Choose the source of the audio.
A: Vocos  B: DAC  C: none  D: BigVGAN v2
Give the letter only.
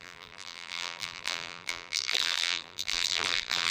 D